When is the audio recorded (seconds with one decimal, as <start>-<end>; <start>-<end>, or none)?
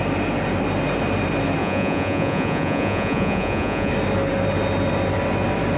0.0-1.6; 3.9-5.8